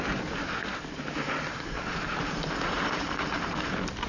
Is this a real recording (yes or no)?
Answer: yes